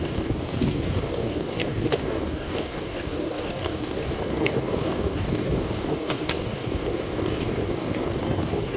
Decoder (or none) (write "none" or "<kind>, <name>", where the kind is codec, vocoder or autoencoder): codec, DAC